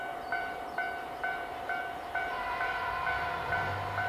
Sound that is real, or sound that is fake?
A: fake